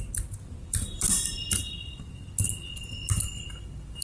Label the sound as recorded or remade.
recorded